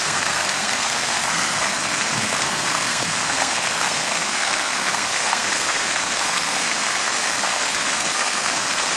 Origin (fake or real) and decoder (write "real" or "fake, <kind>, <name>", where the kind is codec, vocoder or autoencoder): fake, codec, SNAC